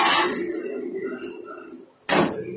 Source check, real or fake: real